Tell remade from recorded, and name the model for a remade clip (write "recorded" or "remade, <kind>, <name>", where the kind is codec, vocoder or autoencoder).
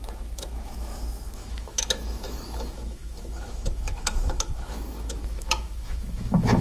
remade, autoencoder, DAC-VAE